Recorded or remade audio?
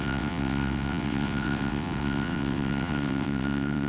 remade